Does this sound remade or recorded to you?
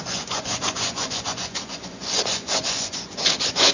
remade